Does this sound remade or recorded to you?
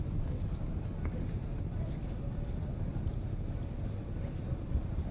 recorded